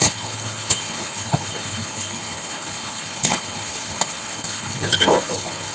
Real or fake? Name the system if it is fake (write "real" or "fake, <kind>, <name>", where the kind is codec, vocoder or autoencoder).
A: fake, codec, HILCodec